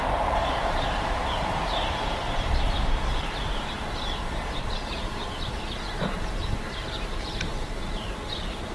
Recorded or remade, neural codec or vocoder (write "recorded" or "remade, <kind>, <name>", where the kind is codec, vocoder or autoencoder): remade, vocoder, BigVGAN v2